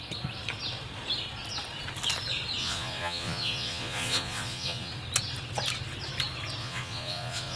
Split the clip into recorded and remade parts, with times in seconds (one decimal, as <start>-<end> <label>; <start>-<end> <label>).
0.0-2.6 recorded; 2.6-4.9 remade; 4.9-6.6 recorded; 6.6-7.6 remade